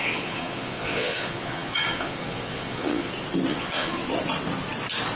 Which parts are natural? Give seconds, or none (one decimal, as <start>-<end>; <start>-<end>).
3.1-3.5; 4.1-5.2